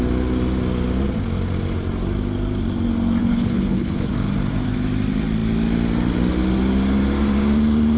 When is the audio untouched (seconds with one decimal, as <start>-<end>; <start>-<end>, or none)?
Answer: 0.0-3.2; 4.1-8.0